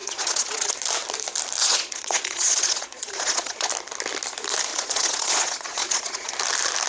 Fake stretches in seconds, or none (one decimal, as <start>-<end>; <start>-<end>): 0.0-0.7; 1.6-3.7; 4.7-6.3

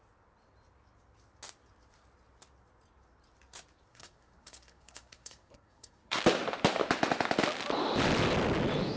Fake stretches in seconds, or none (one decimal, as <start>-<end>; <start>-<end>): 3.9-6.2

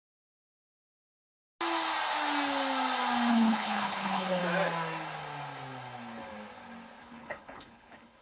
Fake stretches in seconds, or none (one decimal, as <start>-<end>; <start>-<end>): 0.0-0.8; 3.3-4.4; 7.0-8.2

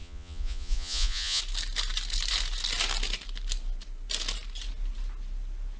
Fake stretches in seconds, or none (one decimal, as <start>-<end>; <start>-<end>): 0.0-1.4